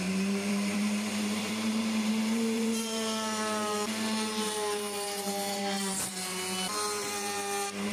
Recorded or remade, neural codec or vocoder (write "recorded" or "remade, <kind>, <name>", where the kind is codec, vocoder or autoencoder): remade, vocoder, BigVGAN v2